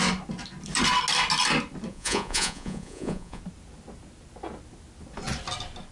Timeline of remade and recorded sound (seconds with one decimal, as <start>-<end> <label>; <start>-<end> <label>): 0.0-1.9 recorded; 1.9-3.4 remade; 3.4-5.9 recorded